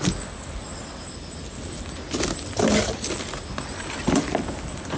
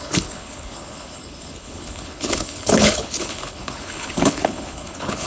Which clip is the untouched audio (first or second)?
first